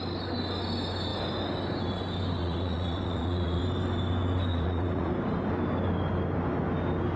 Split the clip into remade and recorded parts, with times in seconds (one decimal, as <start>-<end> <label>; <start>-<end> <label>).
0.0-2.4 recorded; 2.4-3.6 remade; 3.6-4.5 recorded; 4.5-5.1 remade; 5.1-7.2 recorded